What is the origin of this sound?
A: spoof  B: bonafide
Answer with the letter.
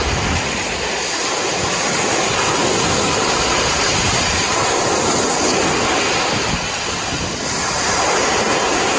B